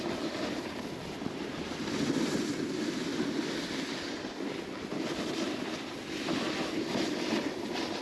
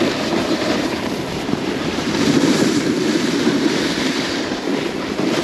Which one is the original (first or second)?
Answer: first